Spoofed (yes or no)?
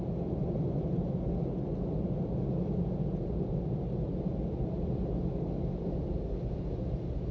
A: no